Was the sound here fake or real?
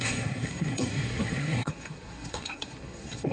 fake